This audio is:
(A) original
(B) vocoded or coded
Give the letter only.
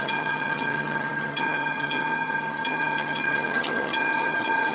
B